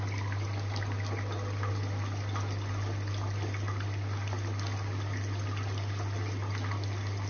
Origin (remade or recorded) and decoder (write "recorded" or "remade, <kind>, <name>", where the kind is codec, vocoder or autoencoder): recorded